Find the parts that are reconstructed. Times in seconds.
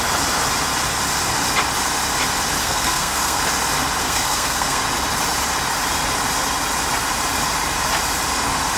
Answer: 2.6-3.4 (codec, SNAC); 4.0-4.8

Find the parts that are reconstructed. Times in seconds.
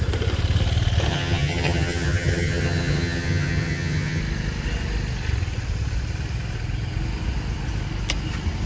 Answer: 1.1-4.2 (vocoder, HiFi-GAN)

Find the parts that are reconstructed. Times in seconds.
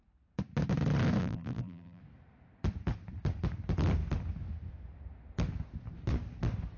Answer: 1.2-2.0 (vocoder, BigVGAN v2)